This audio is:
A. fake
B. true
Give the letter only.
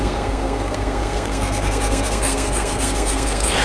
A